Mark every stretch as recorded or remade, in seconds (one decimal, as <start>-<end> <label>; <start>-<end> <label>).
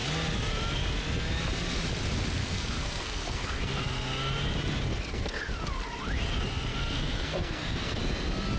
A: 0.0-2.4 recorded; 2.4-3.8 remade; 3.8-4.9 recorded; 4.9-5.5 remade; 5.5-6.7 recorded; 6.7-8.0 remade; 8.0-8.6 recorded